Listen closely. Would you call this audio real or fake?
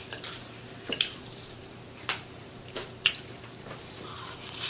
fake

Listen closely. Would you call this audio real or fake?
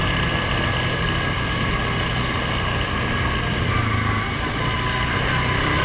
real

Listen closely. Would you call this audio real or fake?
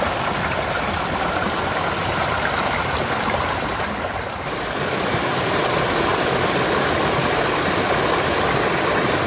fake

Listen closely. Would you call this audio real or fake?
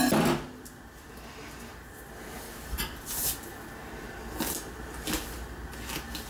real